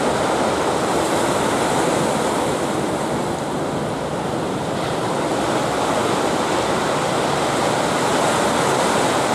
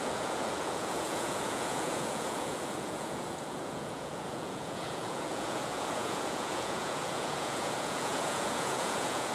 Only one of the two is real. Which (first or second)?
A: first